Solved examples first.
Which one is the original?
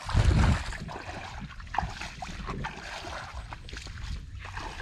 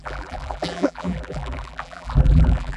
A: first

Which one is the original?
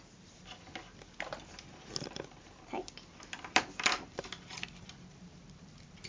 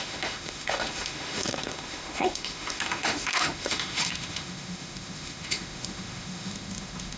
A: first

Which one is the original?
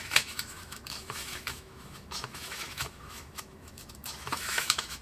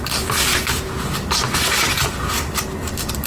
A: second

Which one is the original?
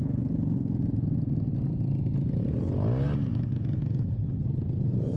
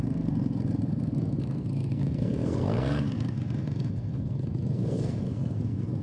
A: first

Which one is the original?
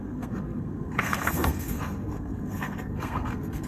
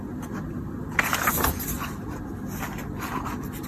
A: second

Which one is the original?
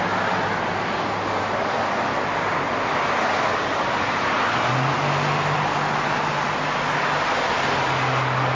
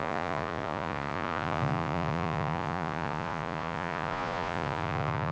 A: first